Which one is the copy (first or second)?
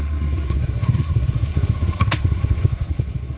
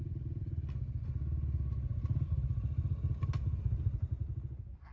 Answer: first